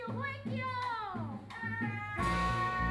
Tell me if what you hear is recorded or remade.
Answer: recorded